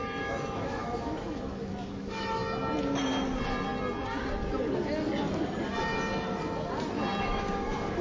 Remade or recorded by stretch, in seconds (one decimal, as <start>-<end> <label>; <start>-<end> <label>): 0.0-2.4 remade; 2.4-7.2 recorded; 7.2-8.0 remade